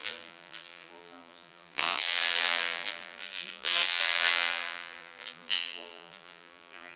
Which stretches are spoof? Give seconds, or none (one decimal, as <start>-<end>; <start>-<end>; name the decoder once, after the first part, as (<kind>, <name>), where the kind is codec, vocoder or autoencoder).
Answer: 0.0-7.0 (vocoder, BigVGAN v2)